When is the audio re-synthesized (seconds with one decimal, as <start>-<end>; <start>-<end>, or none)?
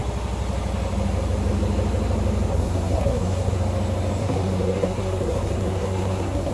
2.5-3.6; 4.2-6.5